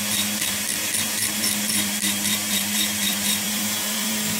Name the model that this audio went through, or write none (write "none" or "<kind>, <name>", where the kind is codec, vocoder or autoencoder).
vocoder, BigVGAN v2